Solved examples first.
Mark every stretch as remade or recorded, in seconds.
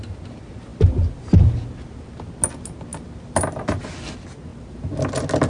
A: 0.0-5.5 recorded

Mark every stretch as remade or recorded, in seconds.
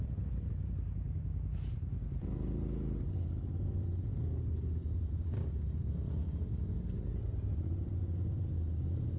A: 0.0-5.9 recorded; 5.9-7.9 remade; 7.9-9.2 recorded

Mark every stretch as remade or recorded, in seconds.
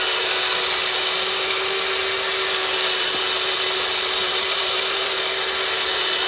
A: 0.0-4.2 recorded; 4.2-5.1 remade; 5.1-6.3 recorded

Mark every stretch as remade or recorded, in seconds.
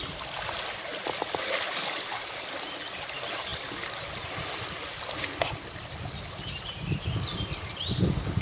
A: 0.0-0.9 remade; 0.9-2.5 recorded; 2.5-8.4 remade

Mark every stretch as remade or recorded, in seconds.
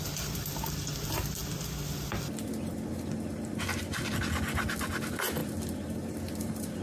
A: 0.0-5.4 recorded; 5.4-6.8 remade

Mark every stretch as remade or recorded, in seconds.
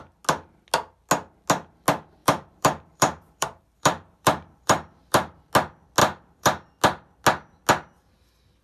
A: 0.0-2.2 recorded; 2.2-5.4 remade; 5.4-6.0 recorded; 6.0-6.7 remade; 6.7-8.6 recorded